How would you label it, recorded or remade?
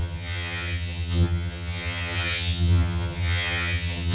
remade